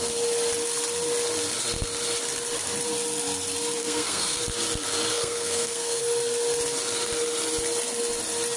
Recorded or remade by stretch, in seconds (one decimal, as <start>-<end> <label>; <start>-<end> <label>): 0.0-3.8 recorded; 3.8-4.4 remade; 4.4-5.1 recorded; 5.1-6.0 remade; 6.0-8.6 recorded